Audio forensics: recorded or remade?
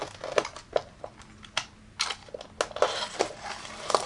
recorded